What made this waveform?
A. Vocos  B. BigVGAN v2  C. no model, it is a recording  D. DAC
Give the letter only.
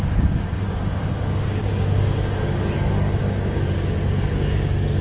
D